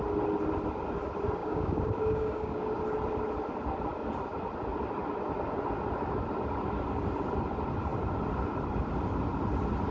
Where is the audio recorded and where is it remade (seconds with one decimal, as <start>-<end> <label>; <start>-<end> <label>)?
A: 0.0-1.4 recorded; 1.4-2.8 remade; 2.8-9.9 recorded

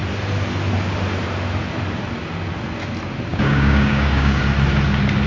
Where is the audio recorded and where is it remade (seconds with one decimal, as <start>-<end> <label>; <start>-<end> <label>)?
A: 0.0-3.3 recorded; 3.3-4.4 remade; 4.4-5.3 recorded

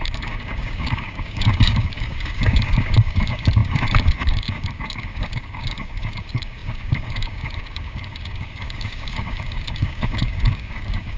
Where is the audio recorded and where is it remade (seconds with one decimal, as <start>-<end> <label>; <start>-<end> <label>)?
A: 0.0-11.2 remade

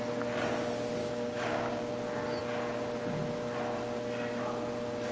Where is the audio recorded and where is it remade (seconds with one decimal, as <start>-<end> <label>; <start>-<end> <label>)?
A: 0.0-1.0 recorded; 1.0-1.9 remade; 1.9-5.1 recorded